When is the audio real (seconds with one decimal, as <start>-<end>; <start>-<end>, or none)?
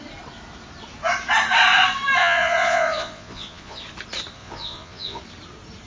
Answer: 0.0-2.2; 3.8-4.4; 5.2-5.9